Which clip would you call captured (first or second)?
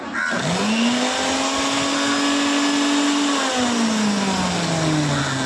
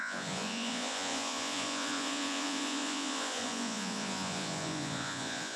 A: first